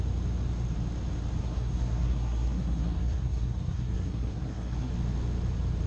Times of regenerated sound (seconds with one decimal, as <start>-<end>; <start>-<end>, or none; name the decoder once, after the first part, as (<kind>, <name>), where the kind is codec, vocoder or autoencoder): 1.4-4.9 (codec, SNAC)